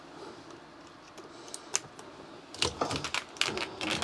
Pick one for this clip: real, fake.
real